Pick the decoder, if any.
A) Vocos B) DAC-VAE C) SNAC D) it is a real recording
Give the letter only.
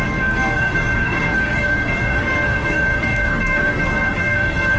C